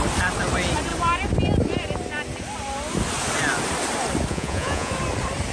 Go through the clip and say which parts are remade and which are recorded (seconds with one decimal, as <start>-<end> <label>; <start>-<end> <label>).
0.0-4.3 recorded; 4.3-4.9 remade; 4.9-5.5 recorded